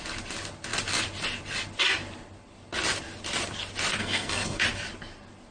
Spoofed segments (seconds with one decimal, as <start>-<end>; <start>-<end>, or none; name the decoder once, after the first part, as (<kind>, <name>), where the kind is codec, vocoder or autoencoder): 4.0-4.6 (codec, SNAC)